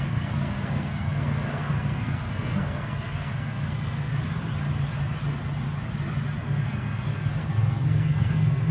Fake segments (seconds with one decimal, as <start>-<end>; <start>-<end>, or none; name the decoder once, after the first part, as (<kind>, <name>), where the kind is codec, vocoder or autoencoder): 0.0-4.1 (codec, SNAC); 6.4-8.7